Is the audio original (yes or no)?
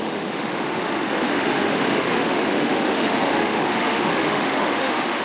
no